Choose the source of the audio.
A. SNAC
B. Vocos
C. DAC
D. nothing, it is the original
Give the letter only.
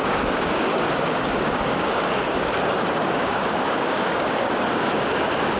C